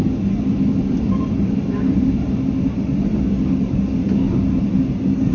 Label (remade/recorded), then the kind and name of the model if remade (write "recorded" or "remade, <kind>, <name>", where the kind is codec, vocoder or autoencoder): recorded